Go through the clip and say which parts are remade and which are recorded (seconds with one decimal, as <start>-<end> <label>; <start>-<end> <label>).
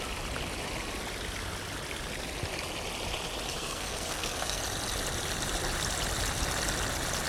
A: 0.0-3.5 recorded; 3.5-4.6 remade; 4.6-7.3 recorded